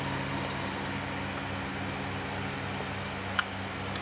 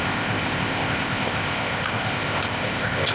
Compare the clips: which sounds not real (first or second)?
second